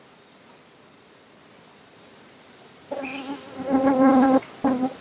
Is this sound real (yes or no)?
no